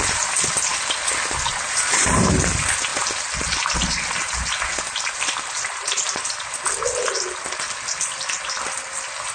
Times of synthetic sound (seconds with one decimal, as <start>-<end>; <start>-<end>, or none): none